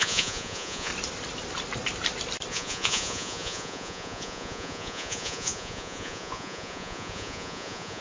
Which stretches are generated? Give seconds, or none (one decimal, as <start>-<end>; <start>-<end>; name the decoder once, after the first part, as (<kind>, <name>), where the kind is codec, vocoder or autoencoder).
0.0-0.9 (vocoder, Vocos); 2.5-8.0